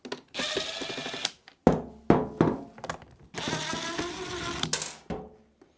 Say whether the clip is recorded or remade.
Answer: recorded